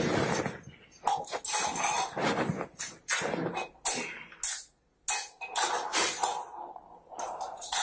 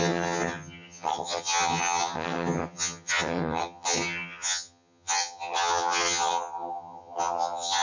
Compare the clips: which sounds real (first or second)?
first